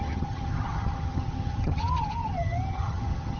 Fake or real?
fake